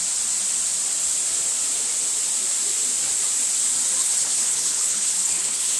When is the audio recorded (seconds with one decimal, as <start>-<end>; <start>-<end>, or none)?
0.0-4.0